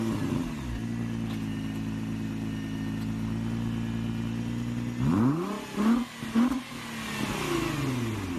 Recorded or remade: recorded